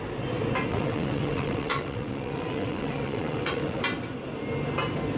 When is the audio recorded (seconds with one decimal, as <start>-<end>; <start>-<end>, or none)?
0.0-0.7; 3.8-5.2

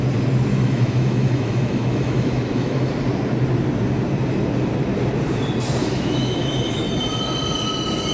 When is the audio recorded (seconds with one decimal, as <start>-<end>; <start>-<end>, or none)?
0.0-0.5; 2.9-5.8; 6.8-8.1

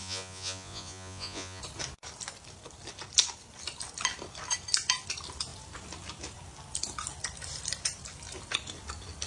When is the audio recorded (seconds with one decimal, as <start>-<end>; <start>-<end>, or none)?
1.6-9.3

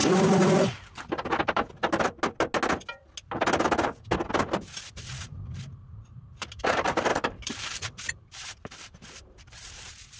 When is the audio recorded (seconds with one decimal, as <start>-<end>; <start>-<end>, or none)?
0.0-4.9